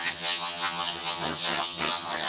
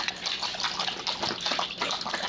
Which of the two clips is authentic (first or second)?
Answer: second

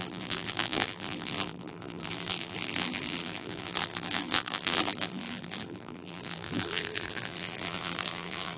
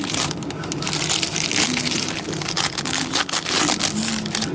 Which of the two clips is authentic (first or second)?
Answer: second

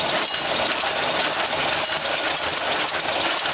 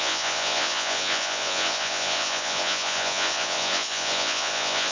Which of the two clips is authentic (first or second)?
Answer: first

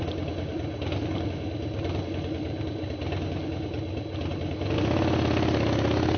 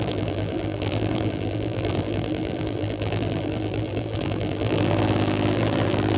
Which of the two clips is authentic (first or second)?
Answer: first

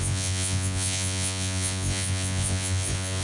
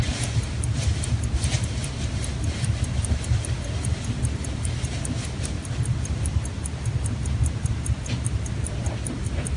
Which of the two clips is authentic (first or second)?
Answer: second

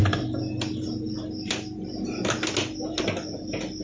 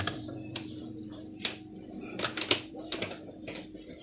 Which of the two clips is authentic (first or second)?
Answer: first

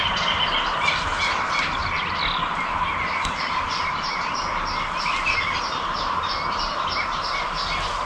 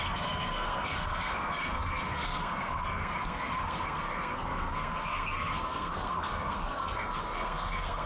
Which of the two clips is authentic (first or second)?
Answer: first